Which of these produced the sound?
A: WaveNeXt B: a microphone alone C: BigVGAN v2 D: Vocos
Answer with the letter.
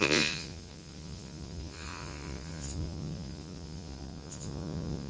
D